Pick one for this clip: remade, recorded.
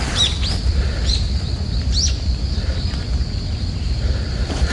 recorded